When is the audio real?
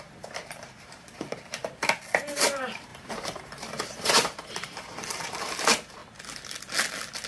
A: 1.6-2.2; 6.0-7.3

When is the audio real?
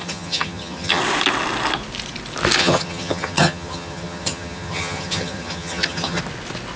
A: 1.0-2.6; 6.2-6.8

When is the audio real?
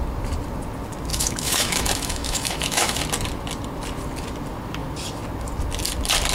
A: 0.0-1.1; 3.0-6.3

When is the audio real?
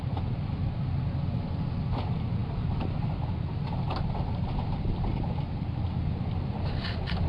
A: 0.0-7.3